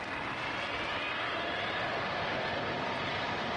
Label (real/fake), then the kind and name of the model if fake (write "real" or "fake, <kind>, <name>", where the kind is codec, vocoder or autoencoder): real